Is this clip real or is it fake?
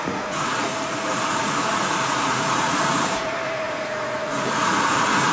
fake